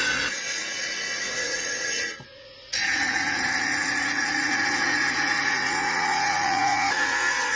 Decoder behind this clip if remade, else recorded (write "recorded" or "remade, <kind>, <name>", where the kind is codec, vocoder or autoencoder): remade, vocoder, Vocos